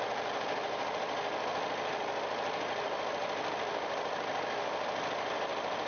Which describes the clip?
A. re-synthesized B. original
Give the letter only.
B